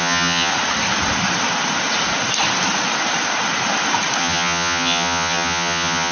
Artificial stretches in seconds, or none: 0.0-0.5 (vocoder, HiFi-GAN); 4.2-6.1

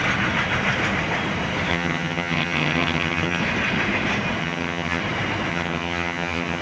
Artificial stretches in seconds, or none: 1.7-3.4 (vocoder, HiFi-GAN); 4.4-5.0; 5.5-6.6

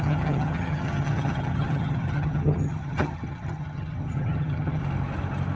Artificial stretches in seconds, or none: 0.0-4.8 (vocoder, HiFi-GAN)

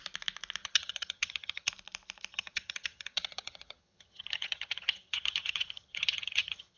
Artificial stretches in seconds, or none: 0.6-1.7 (vocoder, HiFi-GAN); 2.3-6.8

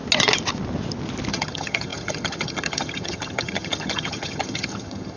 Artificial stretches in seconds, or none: 1.3-5.2 (vocoder, HiFi-GAN)

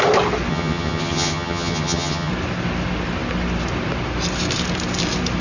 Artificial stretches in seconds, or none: 0.5-2.3 (vocoder, HiFi-GAN)